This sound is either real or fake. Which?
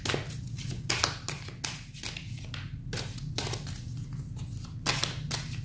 real